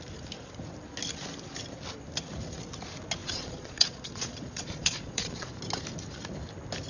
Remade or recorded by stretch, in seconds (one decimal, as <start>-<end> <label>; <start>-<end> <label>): 0.0-3.2 recorded; 3.2-5.5 remade; 5.5-6.9 recorded

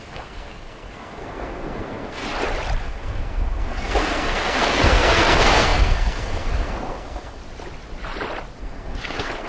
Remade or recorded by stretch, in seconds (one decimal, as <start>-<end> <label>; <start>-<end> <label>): 0.0-2.2 remade; 2.2-2.8 recorded; 2.8-7.4 remade; 7.4-8.6 recorded; 8.6-9.5 remade

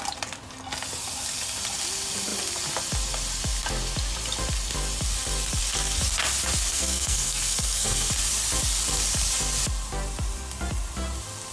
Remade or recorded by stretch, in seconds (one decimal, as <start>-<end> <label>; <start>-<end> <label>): 0.0-6.7 recorded; 6.7-8.1 remade; 8.1-11.5 recorded

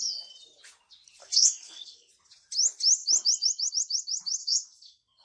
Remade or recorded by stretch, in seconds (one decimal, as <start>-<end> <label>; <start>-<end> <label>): 0.0-1.2 recorded; 1.2-2.1 remade; 2.1-4.4 recorded; 4.4-5.2 remade

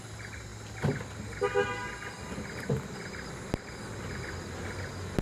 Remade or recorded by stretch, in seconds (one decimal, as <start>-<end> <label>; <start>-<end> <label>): 0.0-5.2 recorded